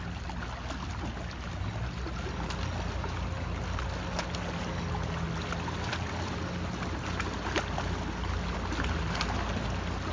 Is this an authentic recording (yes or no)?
yes